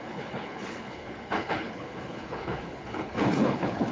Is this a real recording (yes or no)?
no